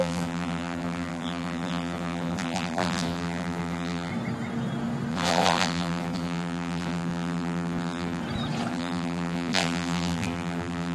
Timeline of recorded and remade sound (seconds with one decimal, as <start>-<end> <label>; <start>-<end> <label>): 0.0-4.1 remade; 4.1-5.1 recorded; 5.1-8.2 remade; 8.2-8.7 recorded; 8.7-10.9 remade